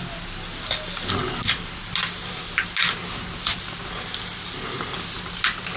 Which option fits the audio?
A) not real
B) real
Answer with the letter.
B